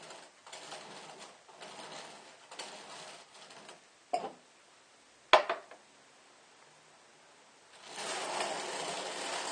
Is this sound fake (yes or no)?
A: no